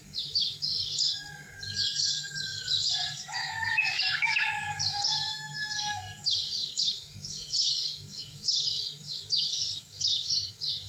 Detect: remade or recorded remade